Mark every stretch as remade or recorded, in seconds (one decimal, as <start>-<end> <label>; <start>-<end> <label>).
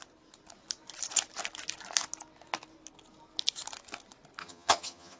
0.0-4.4 recorded; 4.4-5.2 remade